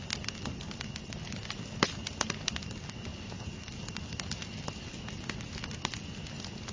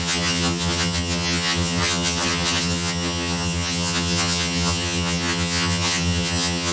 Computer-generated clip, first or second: second